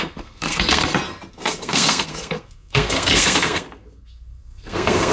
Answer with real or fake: fake